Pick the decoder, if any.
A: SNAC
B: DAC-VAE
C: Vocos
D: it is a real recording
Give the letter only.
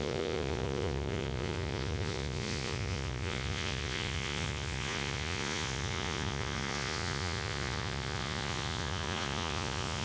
C